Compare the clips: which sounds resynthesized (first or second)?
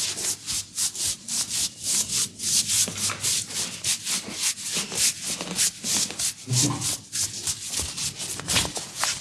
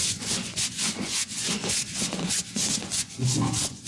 second